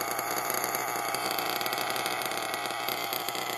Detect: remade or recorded remade